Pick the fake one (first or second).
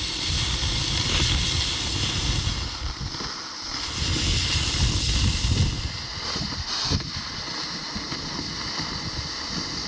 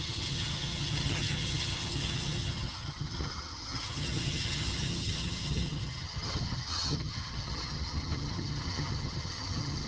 second